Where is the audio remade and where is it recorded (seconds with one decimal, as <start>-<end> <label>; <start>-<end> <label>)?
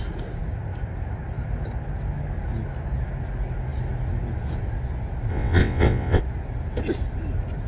0.0-5.3 recorded; 5.3-6.2 remade; 6.2-7.7 recorded